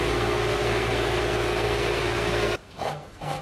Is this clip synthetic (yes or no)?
yes